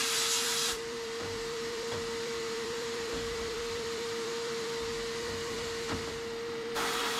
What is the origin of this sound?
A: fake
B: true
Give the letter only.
A